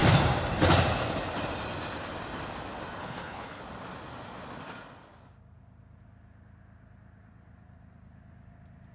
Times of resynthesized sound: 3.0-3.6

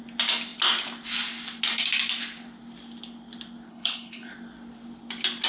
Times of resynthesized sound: 3.7-4.3

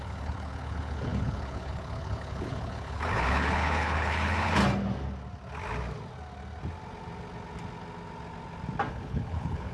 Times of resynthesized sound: 0.0-4.6; 8.9-9.7